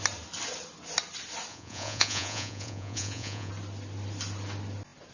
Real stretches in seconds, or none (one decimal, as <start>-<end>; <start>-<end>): 0.0-1.5; 3.5-5.1